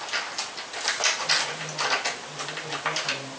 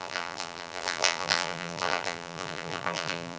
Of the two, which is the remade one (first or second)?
second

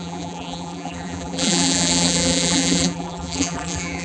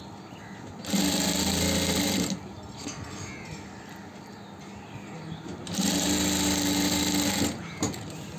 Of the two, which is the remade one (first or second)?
first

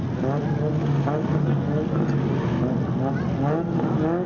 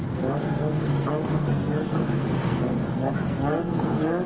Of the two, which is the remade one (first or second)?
second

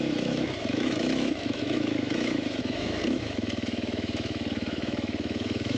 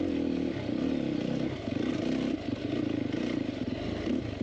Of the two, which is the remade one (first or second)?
first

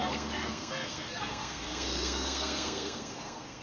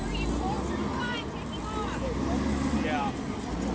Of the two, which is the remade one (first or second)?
first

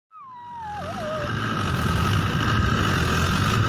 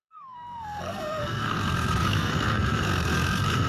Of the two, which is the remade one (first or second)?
second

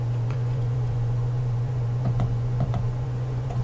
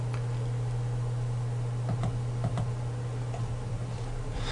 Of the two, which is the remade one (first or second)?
first